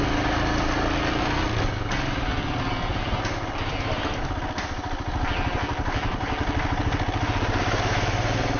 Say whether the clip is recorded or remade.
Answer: recorded